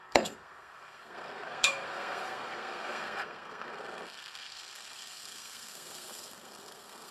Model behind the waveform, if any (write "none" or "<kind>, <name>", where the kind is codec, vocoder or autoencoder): codec, SNAC